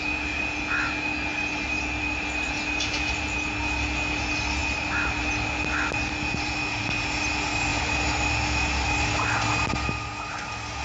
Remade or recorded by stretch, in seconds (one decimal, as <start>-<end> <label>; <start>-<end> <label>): 0.0-10.8 recorded